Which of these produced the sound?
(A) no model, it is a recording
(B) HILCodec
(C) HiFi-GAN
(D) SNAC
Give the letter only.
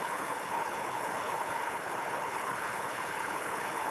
B